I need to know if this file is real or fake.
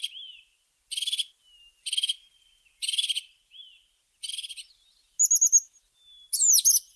real